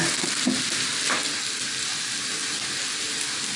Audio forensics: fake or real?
real